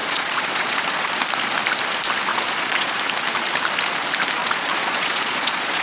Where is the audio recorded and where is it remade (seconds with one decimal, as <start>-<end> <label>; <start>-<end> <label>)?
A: 0.0-1.2 remade; 1.2-2.3 recorded; 2.3-3.0 remade; 3.0-4.4 recorded; 4.4-5.8 remade